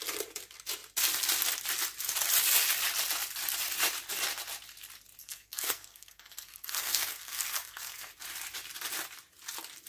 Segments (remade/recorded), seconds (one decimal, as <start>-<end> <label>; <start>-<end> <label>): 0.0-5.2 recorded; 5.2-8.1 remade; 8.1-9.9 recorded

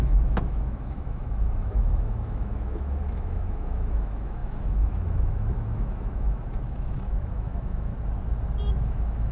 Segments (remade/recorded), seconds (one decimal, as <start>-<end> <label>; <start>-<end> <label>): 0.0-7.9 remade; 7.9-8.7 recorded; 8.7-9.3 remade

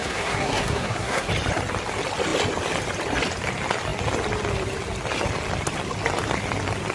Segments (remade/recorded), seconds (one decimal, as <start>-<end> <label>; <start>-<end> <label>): 0.0-1.3 remade; 1.3-6.9 recorded

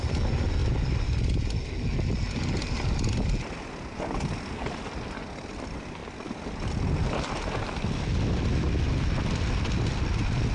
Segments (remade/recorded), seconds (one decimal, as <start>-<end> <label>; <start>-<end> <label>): 0.0-10.5 recorded

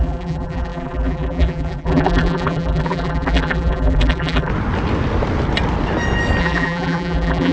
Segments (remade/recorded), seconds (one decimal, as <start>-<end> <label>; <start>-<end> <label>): 0.0-4.5 remade; 4.5-6.4 recorded; 6.4-7.5 remade

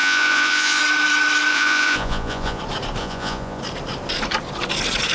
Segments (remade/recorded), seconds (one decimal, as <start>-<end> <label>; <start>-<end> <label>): 0.0-0.8 remade; 0.8-1.5 recorded; 1.5-2.6 remade; 2.6-3.0 recorded; 3.0-3.6 remade; 3.6-5.1 recorded

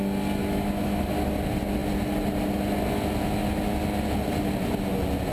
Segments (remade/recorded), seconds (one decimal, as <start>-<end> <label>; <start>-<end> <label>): 0.0-0.4 recorded; 0.4-1.1 remade; 1.1-5.3 recorded

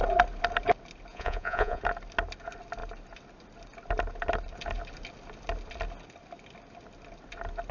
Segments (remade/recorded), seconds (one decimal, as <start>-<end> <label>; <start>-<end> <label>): 0.0-1.1 recorded; 1.1-1.8 remade; 1.8-7.7 recorded